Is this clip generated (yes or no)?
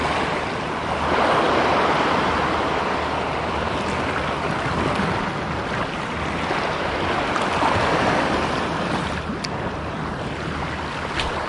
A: no